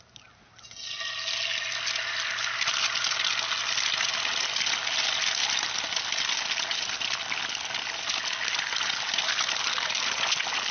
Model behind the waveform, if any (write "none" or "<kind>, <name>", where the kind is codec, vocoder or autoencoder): none